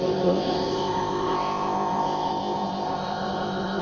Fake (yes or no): yes